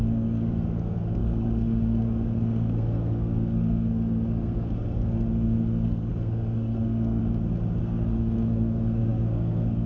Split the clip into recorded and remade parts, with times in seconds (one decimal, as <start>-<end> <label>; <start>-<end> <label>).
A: 0.0-7.2 remade; 7.2-7.8 recorded; 7.8-9.9 remade